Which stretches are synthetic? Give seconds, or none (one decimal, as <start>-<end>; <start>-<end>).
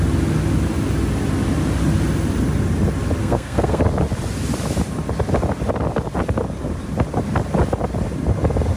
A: 3.2-3.8